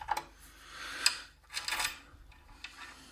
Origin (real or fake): real